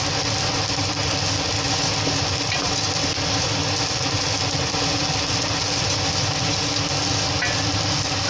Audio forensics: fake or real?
real